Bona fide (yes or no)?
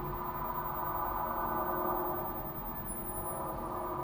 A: yes